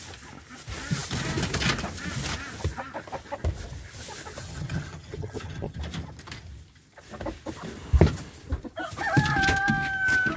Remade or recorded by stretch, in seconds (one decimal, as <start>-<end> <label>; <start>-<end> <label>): 0.0-4.4 recorded; 4.4-5.8 remade; 5.8-10.4 recorded